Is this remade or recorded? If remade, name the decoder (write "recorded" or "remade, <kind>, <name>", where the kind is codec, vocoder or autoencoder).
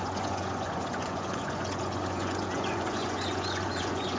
remade, vocoder, Vocos